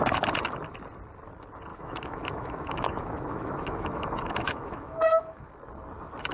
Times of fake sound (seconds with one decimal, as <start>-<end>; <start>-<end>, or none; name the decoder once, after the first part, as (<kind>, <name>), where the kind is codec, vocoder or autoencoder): 1.7-5.5 (autoencoder, DAC-VAE)